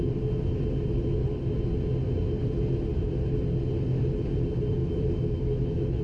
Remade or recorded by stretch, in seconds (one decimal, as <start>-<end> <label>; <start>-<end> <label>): 0.0-4.8 recorded; 4.8-6.0 remade